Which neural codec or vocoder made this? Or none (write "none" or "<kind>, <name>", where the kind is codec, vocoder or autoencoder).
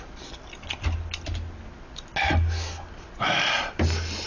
none